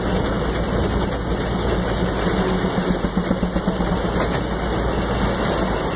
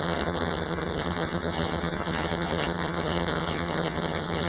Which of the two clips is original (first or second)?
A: first